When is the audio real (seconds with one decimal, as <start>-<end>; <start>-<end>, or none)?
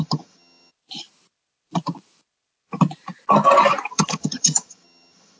0.7-3.9